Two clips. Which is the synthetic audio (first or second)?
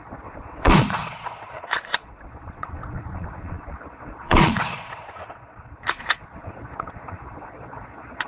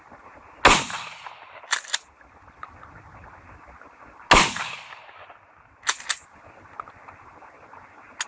first